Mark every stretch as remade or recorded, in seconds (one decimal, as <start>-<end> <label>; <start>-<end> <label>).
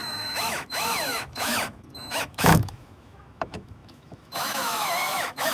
0.0-5.5 remade